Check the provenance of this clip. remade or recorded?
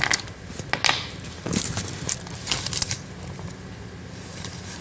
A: recorded